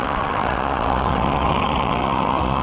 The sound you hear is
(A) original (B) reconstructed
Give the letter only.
B